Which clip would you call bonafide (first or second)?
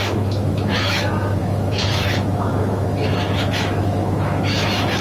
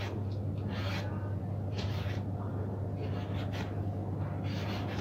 second